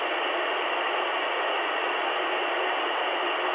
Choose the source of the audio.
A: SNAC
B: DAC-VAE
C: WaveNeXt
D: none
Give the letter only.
D